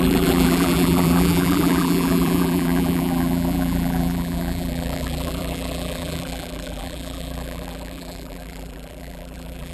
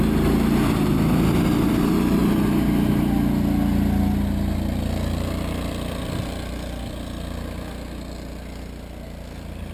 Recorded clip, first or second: second